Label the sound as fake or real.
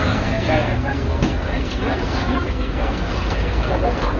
fake